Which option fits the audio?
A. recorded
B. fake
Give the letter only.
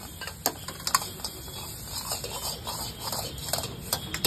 A